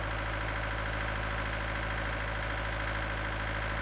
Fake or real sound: real